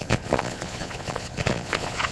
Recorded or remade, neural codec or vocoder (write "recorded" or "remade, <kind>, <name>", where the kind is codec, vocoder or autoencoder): remade, vocoder, Vocos